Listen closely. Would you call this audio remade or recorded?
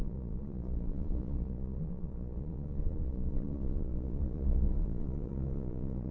remade